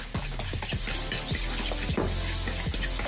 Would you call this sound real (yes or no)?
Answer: yes